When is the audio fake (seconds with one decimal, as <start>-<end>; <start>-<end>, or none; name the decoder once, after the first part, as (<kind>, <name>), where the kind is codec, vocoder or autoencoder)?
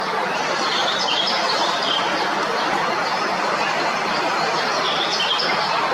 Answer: 0.8-4.3 (vocoder, BigVGAN v2)